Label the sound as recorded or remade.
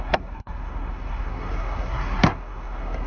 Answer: remade